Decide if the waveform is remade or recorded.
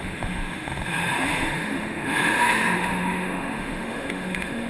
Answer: remade